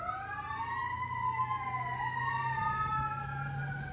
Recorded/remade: recorded